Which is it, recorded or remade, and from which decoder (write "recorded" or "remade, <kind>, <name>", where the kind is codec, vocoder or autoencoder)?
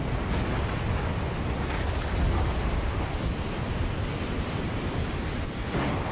recorded